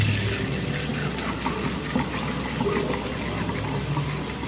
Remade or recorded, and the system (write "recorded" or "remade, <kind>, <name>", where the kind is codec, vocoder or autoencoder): recorded